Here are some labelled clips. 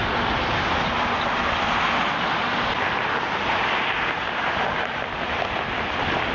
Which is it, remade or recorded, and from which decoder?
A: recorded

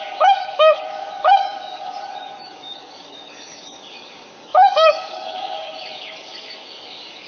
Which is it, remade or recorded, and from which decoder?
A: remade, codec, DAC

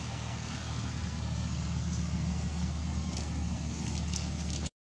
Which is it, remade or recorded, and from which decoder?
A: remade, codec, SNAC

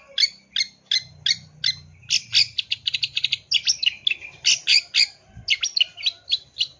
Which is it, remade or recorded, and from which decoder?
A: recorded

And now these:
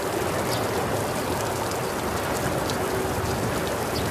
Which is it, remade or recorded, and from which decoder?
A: remade, vocoder, BigVGAN v2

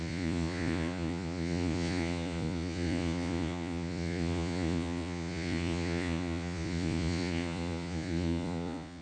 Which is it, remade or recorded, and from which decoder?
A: remade, vocoder, Vocos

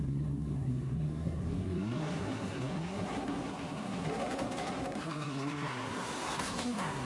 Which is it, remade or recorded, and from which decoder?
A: remade, codec, SNAC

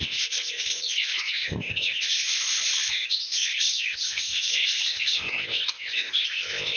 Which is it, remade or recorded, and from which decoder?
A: remade, codec, ZipCodec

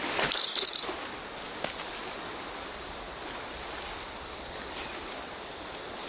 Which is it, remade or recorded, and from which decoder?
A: recorded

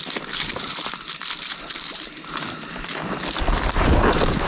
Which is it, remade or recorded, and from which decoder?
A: recorded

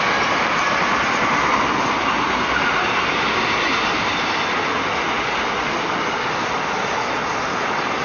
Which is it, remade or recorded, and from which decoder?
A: recorded